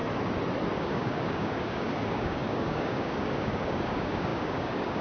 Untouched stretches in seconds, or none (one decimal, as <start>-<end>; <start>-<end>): 0.0-0.8